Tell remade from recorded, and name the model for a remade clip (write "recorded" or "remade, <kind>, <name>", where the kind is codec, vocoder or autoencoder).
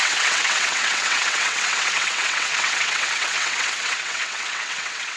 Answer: remade, vocoder, WaveNeXt